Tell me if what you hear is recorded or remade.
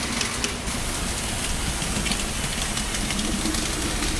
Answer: recorded